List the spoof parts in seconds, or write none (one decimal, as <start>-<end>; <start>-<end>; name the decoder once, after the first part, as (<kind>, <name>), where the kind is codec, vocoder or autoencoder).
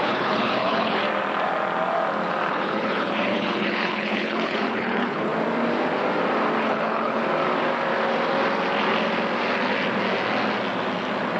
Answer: 0.0-1.0 (codec, HILCodec); 2.5-5.3; 6.6-7.2